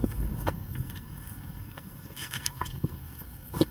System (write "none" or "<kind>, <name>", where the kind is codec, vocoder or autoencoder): codec, SNAC